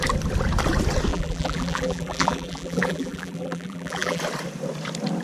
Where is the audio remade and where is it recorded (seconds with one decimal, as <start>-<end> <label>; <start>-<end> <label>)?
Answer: 0.0-1.1 recorded; 1.1-4.2 remade; 4.2-5.2 recorded